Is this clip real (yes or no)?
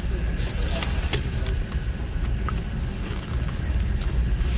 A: yes